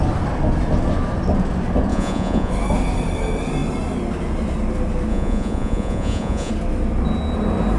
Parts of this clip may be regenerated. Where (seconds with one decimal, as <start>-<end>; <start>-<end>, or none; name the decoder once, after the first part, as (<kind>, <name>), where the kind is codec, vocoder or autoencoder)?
1.9-2.5 (vocoder, Vocos); 5.1-6.5